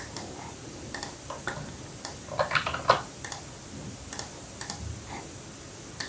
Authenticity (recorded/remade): recorded